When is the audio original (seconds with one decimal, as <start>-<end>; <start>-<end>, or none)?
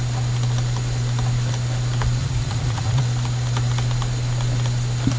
0.0-2.2; 3.0-5.2